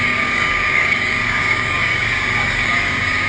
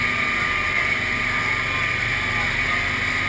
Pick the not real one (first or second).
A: first